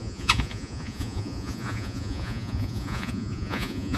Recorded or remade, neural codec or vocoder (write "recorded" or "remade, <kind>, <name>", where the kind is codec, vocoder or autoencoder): remade, vocoder, Vocos